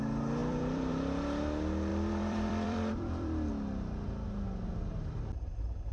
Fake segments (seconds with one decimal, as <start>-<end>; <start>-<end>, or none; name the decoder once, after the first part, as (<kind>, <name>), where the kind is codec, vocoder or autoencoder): 0.4-0.9 (vocoder, BigVGAN v2); 1.9-3.5